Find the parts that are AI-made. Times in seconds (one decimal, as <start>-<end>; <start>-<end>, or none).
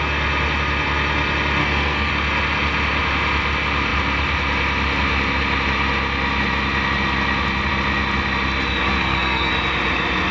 1.6-2.1; 9.0-9.5